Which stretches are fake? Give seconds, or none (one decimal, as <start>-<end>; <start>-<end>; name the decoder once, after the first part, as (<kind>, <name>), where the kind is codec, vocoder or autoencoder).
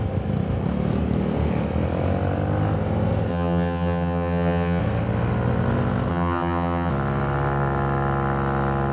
3.3-4.8 (vocoder, HiFi-GAN); 6.1-6.9